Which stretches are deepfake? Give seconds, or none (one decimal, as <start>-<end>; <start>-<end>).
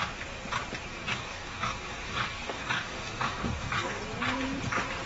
0.9-4.0